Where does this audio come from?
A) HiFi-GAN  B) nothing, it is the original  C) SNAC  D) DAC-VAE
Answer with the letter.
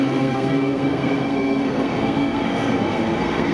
C